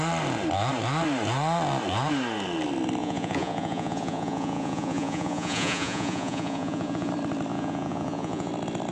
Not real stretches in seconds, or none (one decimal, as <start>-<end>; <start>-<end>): 3.0-7.1; 7.5-8.5

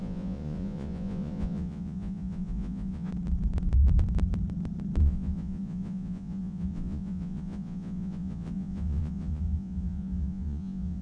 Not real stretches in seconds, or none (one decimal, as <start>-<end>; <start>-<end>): 0.0-3.1; 5.0-11.0